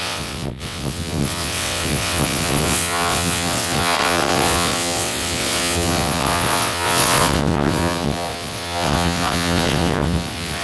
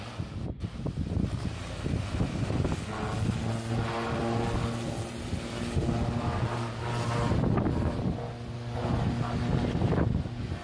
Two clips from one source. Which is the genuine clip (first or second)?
second